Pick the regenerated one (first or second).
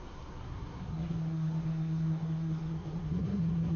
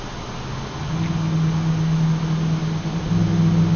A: first